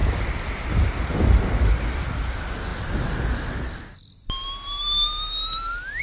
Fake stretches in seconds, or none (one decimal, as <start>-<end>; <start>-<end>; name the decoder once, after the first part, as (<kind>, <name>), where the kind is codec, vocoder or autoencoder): none